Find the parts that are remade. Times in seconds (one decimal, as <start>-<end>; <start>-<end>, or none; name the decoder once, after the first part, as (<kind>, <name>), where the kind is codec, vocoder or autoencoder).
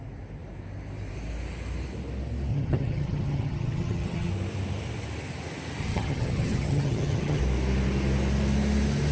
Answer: 2.5-4.3 (vocoder, HiFi-GAN); 5.8-7.4